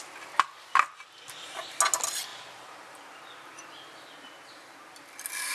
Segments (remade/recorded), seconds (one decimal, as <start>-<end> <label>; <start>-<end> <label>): 0.0-2.3 recorded; 2.3-3.2 remade; 3.2-5.5 recorded